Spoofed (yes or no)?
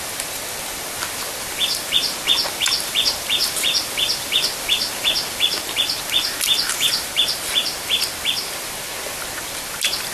no